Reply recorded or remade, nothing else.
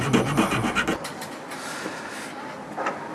recorded